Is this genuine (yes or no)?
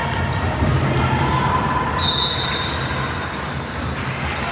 yes